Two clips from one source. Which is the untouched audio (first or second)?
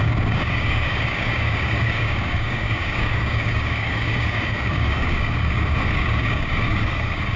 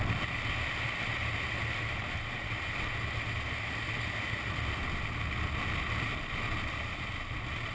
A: second